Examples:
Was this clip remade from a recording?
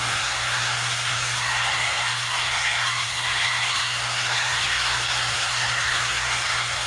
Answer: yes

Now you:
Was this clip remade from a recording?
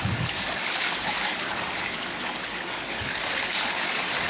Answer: yes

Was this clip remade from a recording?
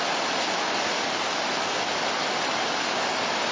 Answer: no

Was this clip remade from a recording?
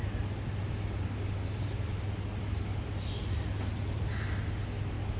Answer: no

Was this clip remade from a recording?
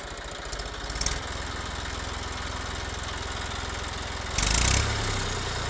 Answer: no